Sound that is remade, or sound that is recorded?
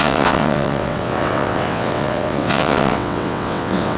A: remade